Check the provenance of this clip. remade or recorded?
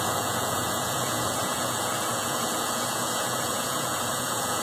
remade